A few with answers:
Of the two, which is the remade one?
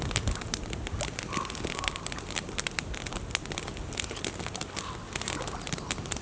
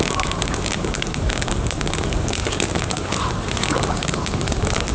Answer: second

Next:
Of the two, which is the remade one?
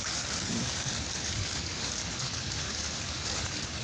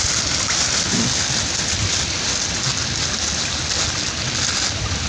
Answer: first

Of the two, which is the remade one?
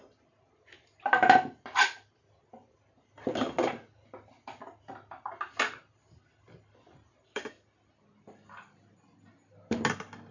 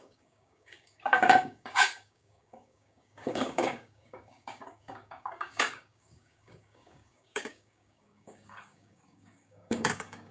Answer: second